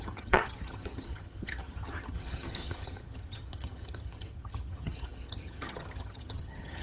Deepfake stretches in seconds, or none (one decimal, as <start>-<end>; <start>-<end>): 0.0-6.8